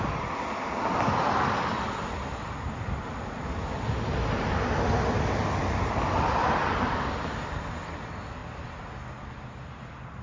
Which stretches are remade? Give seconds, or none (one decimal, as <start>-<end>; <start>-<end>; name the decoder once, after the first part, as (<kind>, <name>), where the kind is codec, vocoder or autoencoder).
none